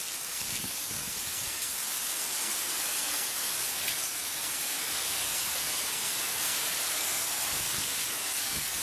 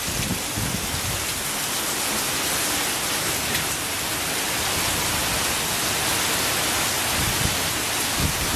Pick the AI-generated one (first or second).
first